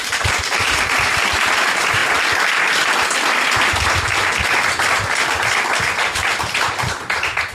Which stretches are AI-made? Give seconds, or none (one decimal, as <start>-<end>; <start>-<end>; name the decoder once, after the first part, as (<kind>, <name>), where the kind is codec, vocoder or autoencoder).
0.0-2.0 (vocoder, BigVGAN v2); 5.8-7.5